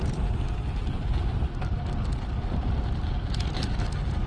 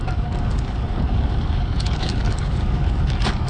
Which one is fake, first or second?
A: second